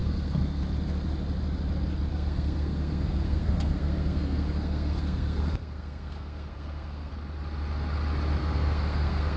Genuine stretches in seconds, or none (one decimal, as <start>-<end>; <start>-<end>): 0.6-2.1; 7.1-8.4